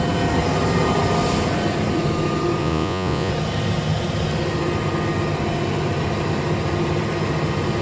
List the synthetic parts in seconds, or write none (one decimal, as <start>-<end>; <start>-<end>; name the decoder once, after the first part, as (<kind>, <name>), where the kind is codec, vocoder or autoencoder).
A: 2.6-3.3 (vocoder, Vocos)